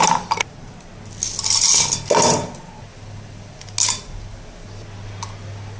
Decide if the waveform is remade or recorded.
recorded